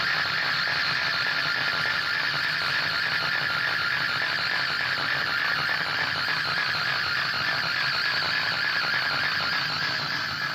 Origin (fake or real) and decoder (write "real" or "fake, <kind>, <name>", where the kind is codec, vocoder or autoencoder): real